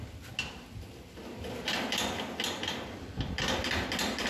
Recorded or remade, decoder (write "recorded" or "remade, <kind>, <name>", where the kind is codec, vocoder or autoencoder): recorded